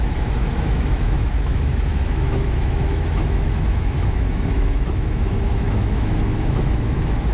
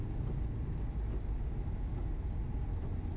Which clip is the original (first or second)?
second